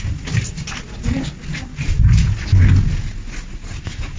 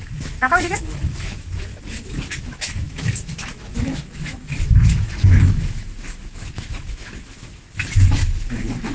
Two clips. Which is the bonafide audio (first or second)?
first